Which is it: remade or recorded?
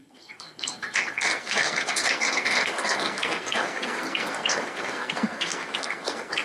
remade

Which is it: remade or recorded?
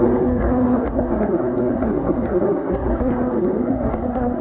remade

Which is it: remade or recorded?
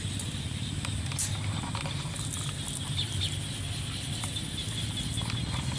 recorded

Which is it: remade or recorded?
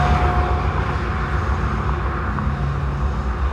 recorded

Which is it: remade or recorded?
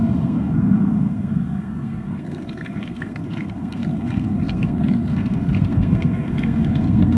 remade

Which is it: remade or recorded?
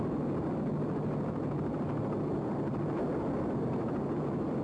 recorded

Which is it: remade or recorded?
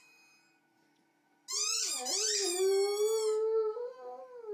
recorded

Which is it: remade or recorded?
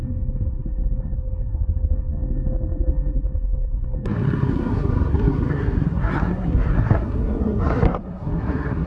remade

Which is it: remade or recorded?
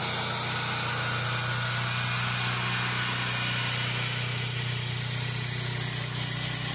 recorded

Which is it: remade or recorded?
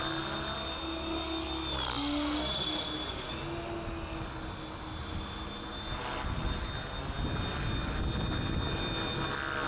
recorded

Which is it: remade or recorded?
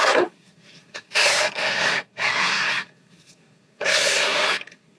remade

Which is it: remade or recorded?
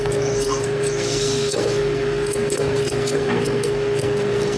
remade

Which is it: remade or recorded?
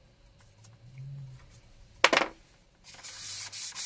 recorded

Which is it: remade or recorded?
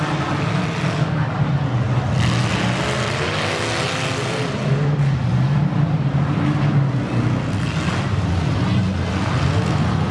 recorded